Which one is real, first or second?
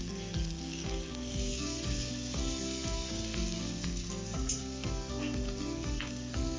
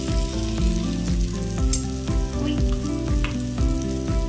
second